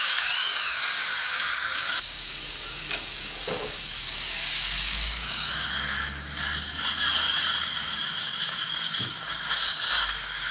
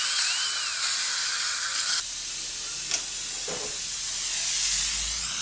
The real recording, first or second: second